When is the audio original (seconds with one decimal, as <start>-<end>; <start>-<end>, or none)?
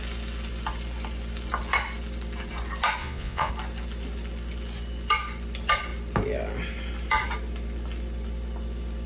0.0-3.0; 3.5-9.1